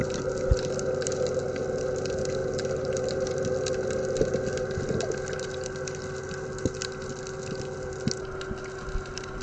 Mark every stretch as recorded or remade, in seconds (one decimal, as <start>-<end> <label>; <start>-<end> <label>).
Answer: 0.0-9.4 recorded